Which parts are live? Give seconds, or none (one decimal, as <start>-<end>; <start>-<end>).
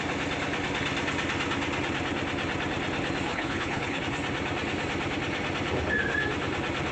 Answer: 0.0-3.3; 4.0-6.9